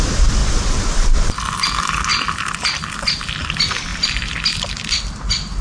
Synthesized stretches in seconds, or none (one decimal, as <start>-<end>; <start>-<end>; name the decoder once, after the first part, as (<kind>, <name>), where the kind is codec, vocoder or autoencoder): none